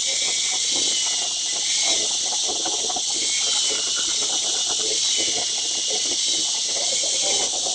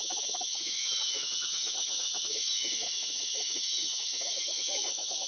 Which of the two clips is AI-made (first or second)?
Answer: second